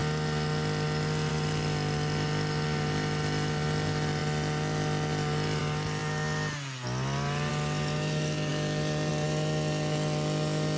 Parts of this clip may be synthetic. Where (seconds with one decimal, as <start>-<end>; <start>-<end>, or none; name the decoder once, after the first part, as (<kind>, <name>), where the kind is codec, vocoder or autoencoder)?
none